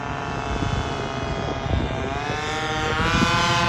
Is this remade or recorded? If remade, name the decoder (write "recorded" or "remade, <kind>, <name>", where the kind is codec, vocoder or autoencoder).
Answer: recorded